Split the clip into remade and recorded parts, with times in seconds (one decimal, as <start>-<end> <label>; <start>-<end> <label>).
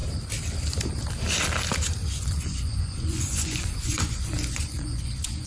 0.0-2.0 recorded; 2.0-5.5 remade